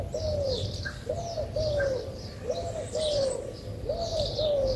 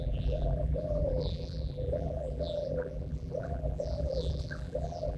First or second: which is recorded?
first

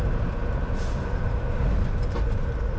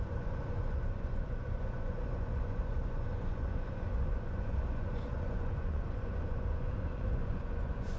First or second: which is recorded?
first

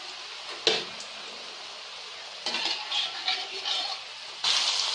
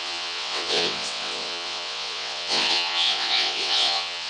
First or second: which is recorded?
first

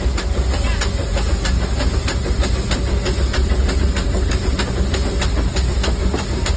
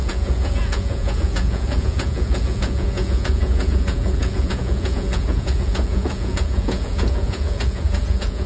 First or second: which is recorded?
first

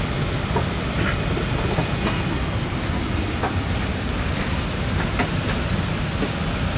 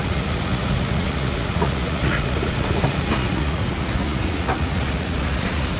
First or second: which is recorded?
first